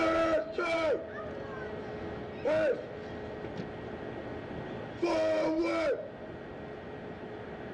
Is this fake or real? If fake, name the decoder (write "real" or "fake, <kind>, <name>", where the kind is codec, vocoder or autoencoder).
real